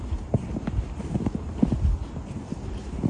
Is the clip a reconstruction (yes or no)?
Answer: no